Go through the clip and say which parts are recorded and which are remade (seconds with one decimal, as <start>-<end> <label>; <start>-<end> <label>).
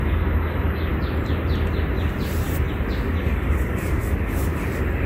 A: 0.0-0.9 remade; 0.9-3.2 recorded; 3.2-4.5 remade; 4.5-5.1 recorded